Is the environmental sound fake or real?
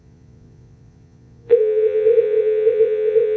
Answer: fake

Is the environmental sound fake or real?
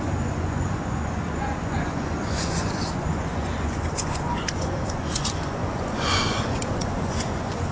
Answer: fake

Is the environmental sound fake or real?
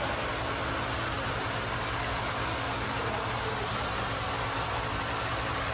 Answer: real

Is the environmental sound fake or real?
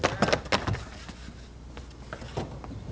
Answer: real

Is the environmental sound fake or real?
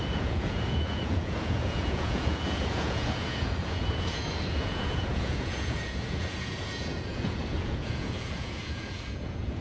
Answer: fake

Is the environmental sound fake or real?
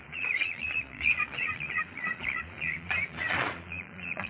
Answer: fake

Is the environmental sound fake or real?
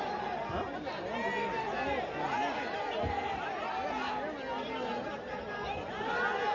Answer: real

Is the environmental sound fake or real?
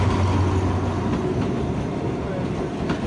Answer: real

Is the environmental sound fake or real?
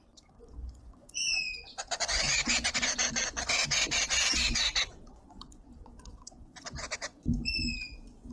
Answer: fake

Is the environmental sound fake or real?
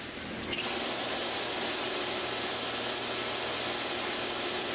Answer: real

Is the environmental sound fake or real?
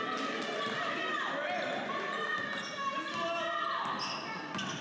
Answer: real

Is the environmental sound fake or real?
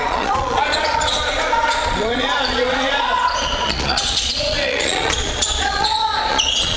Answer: fake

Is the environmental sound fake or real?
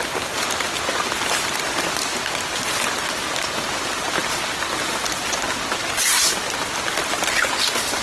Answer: real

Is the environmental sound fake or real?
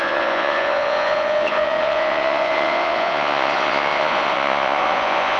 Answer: fake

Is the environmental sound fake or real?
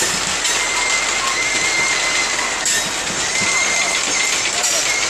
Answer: real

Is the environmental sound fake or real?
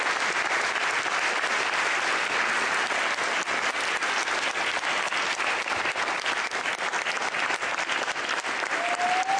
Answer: real